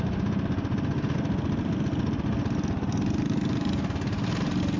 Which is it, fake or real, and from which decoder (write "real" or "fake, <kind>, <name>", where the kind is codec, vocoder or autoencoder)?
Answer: real